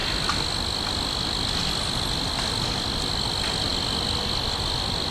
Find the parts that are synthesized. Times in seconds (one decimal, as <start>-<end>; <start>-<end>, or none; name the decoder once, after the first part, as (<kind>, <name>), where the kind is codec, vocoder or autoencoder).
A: none